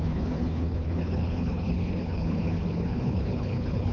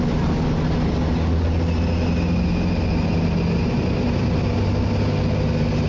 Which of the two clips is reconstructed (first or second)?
first